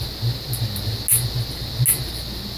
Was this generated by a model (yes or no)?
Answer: no